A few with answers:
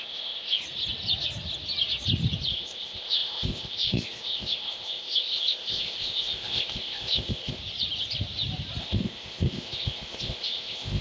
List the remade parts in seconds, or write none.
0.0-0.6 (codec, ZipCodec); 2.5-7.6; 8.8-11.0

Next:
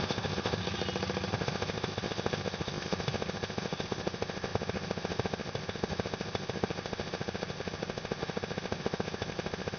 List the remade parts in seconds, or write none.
0.0-0.6 (codec, ZipCodec); 1.3-9.8

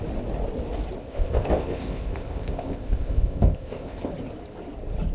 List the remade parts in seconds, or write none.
1.0-4.1 (codec, ZipCodec)

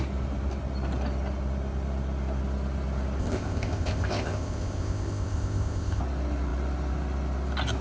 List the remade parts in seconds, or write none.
3.2-6.0 (codec, ZipCodec)